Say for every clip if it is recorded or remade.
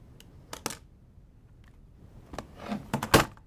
recorded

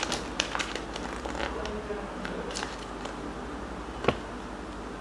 recorded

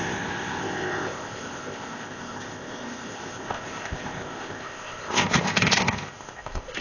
remade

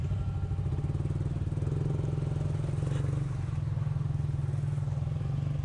recorded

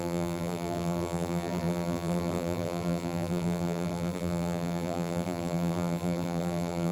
remade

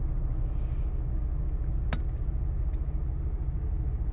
recorded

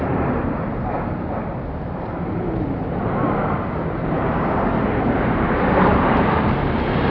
remade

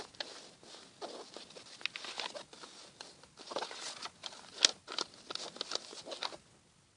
recorded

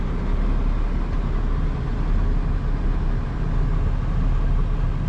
recorded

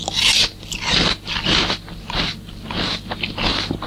recorded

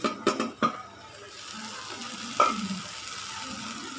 recorded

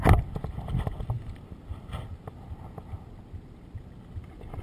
recorded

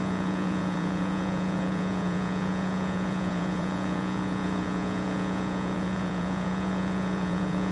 remade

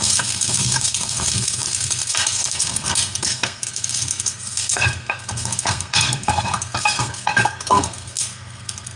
remade